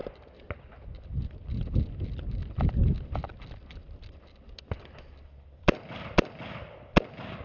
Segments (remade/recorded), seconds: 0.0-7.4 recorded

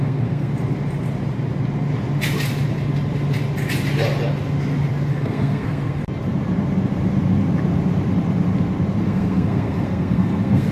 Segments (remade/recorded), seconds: 0.0-0.5 remade; 0.5-5.1 recorded; 5.1-6.0 remade; 6.0-9.0 recorded; 9.0-10.7 remade